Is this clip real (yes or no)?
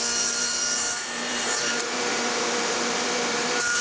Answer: no